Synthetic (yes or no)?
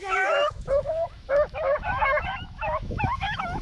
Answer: yes